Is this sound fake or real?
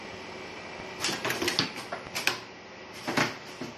real